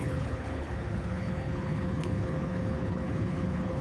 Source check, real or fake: fake